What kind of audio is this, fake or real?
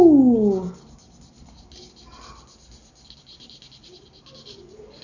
real